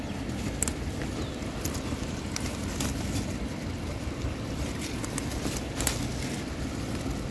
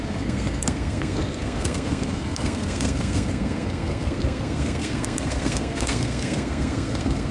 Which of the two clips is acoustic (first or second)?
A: first